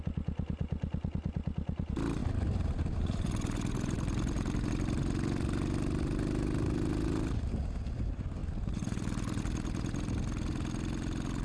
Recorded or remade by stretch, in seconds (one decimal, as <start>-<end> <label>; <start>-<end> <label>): 0.0-2.2 recorded; 2.2-4.7 remade; 4.7-8.4 recorded; 8.4-9.4 remade; 9.4-11.4 recorded